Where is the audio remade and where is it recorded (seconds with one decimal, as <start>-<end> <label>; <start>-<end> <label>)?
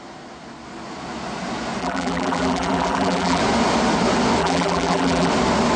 0.0-1.8 recorded; 1.8-3.4 remade; 3.4-4.4 recorded; 4.4-5.3 remade; 5.3-5.8 recorded